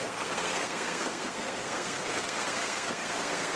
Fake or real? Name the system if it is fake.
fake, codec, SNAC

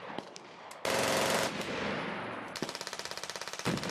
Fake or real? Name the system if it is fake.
real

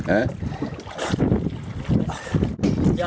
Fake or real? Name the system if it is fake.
real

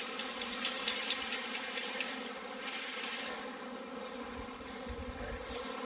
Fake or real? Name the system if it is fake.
real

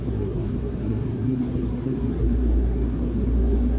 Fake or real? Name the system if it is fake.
fake, codec, SNAC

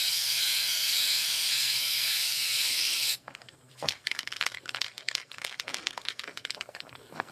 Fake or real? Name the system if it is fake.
fake, codec, SNAC